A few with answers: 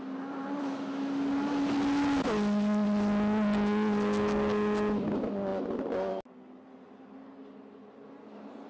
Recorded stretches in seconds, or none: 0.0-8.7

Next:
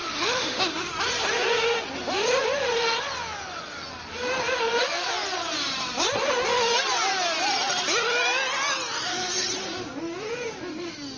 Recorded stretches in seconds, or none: 0.6-11.2

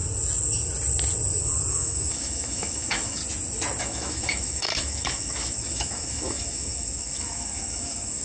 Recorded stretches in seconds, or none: 0.0-1.7; 3.2-3.8

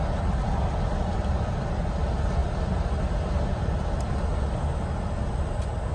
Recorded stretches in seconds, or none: 0.0-5.9

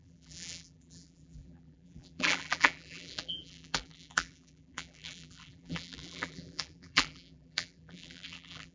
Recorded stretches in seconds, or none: none

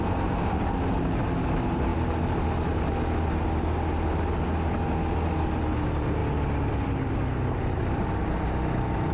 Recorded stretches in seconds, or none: 0.0-9.1